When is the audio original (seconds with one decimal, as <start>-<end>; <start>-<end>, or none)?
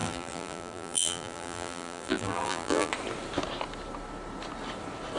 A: 2.9-5.2